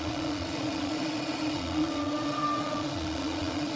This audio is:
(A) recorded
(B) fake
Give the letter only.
B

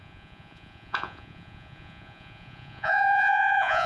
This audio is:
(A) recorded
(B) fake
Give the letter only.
B